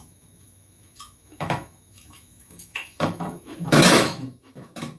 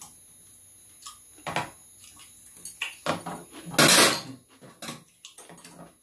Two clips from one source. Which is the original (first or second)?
second